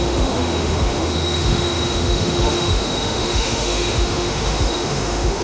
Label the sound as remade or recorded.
remade